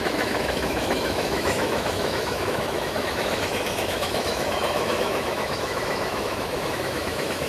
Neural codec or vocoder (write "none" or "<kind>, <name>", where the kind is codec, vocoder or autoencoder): autoencoder, DAC-VAE